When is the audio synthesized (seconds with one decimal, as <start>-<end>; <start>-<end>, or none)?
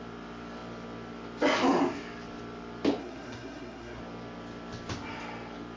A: 3.0-4.0